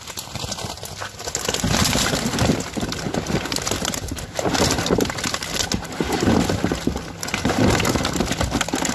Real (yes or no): yes